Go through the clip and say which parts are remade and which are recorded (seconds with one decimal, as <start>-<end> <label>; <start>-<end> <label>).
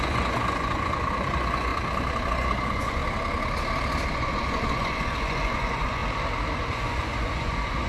0.0-1.7 remade; 1.7-2.3 recorded; 2.3-3.0 remade; 3.0-4.1 recorded; 4.1-6.0 remade; 6.0-6.6 recorded; 6.6-7.9 remade